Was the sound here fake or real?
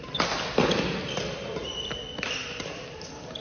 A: real